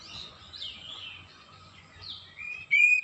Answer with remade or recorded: remade